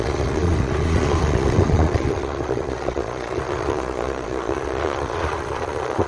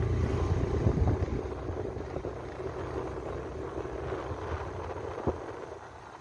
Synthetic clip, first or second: first